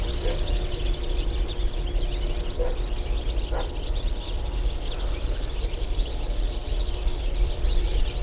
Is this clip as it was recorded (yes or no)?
yes